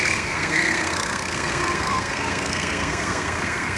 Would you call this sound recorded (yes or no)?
no